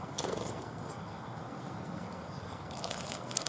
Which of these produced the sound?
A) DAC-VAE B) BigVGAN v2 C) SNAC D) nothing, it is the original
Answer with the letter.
C